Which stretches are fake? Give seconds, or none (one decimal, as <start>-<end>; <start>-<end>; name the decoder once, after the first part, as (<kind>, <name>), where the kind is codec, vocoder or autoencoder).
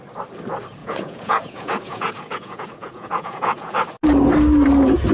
0.8-3.9 (vocoder, Vocos)